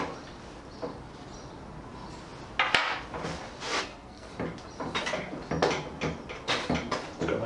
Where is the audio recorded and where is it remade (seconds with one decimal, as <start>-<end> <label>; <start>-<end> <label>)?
0.0-3.8 recorded; 3.8-4.3 remade; 4.3-7.5 recorded